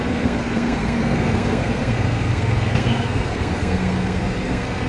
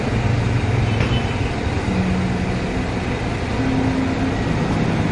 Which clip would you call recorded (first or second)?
second